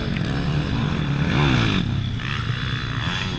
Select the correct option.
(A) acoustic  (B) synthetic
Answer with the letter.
A